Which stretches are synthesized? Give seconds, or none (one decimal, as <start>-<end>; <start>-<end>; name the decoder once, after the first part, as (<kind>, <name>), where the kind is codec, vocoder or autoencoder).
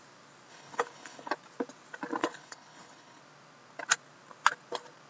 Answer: 0.5-1.3 (codec, HILCodec); 2.2-3.2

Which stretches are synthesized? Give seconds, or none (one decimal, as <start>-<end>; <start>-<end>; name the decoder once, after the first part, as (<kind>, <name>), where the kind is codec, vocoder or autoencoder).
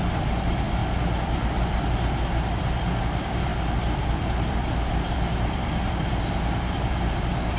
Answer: 0.0-7.6 (vocoder, BigVGAN v2)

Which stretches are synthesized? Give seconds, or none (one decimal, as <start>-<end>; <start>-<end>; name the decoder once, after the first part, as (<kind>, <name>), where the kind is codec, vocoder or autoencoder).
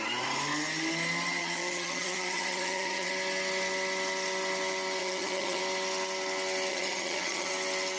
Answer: 1.4-3.1 (vocoder, HiFi-GAN); 5.0-5.6; 6.7-7.5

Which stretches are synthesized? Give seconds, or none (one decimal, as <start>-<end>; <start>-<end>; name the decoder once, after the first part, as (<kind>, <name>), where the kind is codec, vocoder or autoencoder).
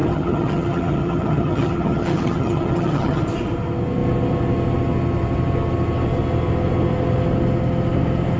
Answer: 0.0-3.2 (vocoder, HiFi-GAN)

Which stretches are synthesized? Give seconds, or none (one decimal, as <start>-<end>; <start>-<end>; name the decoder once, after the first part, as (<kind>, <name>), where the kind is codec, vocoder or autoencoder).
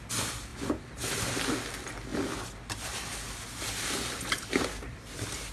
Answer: none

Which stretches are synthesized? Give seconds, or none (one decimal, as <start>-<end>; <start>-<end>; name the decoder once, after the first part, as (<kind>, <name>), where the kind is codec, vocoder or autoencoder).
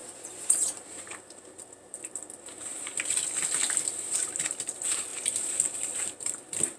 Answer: 0.0-5.1 (vocoder, BigVGAN v2); 5.8-6.8